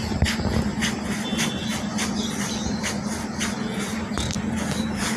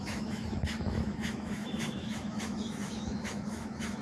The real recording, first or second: first